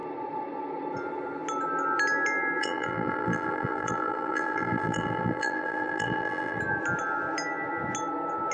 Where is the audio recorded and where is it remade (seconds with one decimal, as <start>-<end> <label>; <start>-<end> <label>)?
0.0-2.6 recorded; 2.6-6.6 remade; 6.6-8.5 recorded